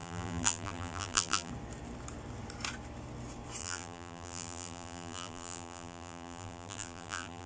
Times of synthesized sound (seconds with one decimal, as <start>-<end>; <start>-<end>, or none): 0.0-1.5; 3.6-7.5